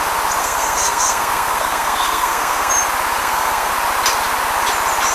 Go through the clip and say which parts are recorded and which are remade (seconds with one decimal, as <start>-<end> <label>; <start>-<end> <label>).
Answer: 0.0-0.4 recorded; 0.4-2.7 remade; 2.7-3.2 recorded; 3.2-3.7 remade; 3.7-5.1 recorded